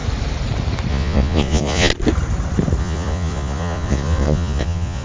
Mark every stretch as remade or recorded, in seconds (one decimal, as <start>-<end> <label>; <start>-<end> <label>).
0.0-0.9 recorded; 0.9-1.9 remade; 1.9-2.8 recorded; 2.8-5.0 remade